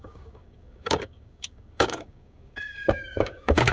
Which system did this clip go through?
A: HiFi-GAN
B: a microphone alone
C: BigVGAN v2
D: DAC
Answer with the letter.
D